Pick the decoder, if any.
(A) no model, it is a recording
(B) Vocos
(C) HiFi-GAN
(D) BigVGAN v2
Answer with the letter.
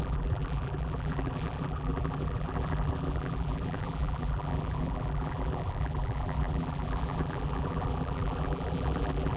D